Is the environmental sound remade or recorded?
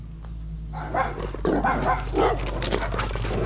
recorded